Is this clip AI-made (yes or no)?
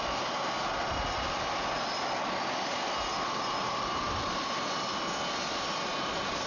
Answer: no